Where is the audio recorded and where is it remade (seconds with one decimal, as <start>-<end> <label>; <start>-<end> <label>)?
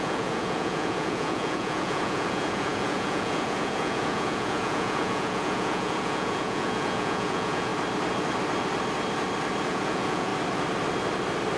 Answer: 0.0-7.7 remade; 7.7-9.7 recorded; 9.7-10.3 remade; 10.3-11.6 recorded